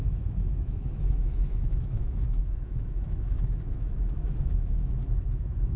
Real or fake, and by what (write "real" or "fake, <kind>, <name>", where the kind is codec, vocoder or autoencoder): fake, autoencoder, DAC-VAE